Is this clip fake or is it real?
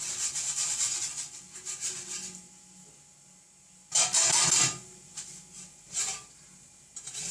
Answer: real